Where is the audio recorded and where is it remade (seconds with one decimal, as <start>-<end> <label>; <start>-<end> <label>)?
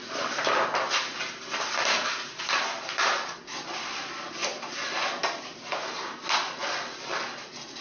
0.0-4.4 recorded; 4.4-6.2 remade; 6.2-7.8 recorded